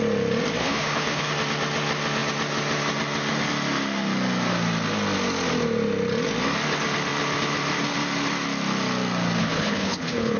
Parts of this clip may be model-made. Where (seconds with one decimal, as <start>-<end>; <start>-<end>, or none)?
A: 0.6-1.3; 9.4-10.4